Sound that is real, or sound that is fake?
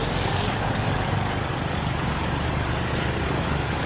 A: fake